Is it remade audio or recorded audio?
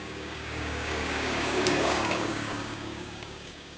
remade